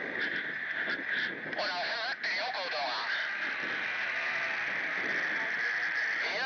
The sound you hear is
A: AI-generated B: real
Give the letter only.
B